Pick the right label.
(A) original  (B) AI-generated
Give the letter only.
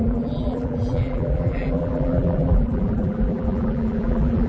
B